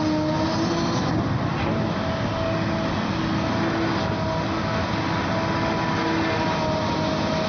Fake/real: real